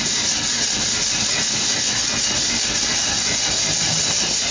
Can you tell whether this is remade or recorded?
recorded